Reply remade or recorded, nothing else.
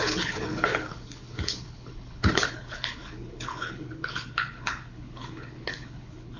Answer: remade